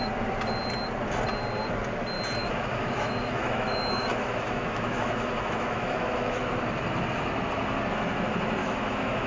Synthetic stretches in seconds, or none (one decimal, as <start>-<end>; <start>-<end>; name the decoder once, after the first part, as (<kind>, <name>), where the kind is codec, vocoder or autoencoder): 2.4-6.4 (autoencoder, DAC-VAE); 8.6-9.3